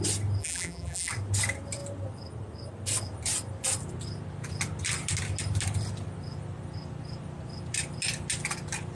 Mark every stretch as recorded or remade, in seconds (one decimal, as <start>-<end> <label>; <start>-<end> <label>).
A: 0.0-0.4 recorded; 0.4-1.1 remade; 1.1-8.9 recorded

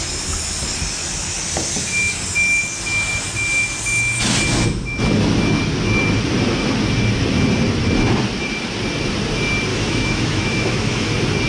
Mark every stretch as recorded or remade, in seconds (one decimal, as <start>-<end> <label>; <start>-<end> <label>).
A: 0.0-9.7 recorded; 9.7-11.1 remade; 11.1-11.5 recorded